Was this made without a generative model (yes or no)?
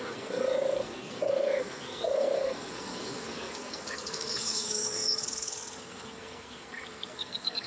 no